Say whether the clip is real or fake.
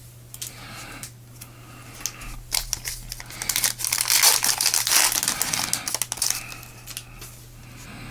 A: real